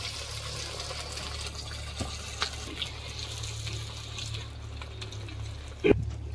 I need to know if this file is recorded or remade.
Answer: recorded